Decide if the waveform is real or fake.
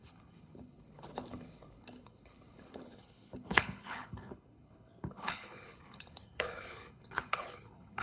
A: fake